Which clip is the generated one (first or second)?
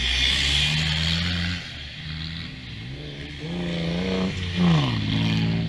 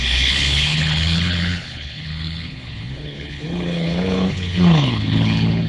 second